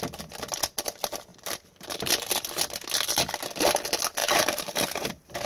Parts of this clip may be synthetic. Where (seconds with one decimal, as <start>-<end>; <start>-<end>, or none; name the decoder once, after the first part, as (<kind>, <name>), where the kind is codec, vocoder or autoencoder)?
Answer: 1.3-2.4 (vocoder, BigVGAN v2); 4.2-5.1